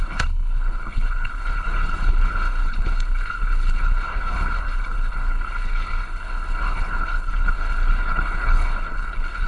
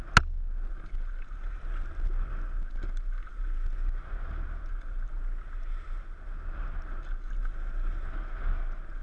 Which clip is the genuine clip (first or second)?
second